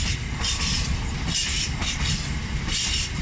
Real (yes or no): yes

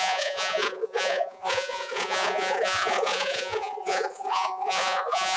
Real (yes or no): no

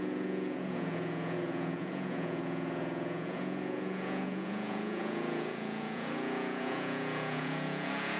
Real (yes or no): no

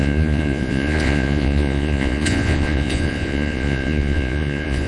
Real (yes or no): no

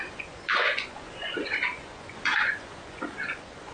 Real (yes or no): no